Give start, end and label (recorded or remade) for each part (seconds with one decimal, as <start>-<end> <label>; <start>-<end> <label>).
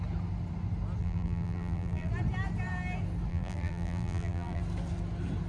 0.0-1.0 recorded; 1.0-2.1 remade; 2.1-3.3 recorded; 3.3-4.6 remade; 4.6-5.5 recorded